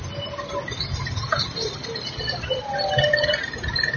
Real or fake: real